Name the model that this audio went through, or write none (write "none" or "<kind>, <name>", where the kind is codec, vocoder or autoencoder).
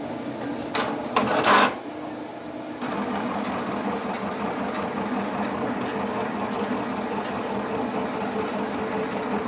none